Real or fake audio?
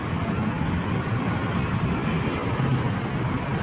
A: real